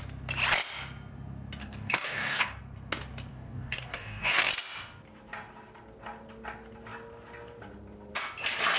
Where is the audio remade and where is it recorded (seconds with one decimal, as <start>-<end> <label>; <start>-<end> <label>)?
0.0-1.6 recorded; 1.6-2.6 remade; 2.6-3.3 recorded; 3.3-4.5 remade; 4.5-8.8 recorded